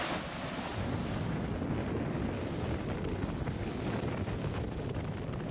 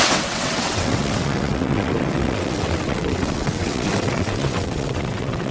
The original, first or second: first